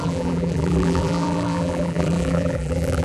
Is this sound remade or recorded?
remade